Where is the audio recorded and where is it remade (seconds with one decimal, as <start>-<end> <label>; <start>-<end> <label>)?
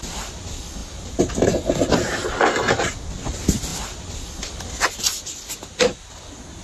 0.0-6.6 recorded